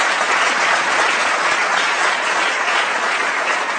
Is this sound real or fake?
fake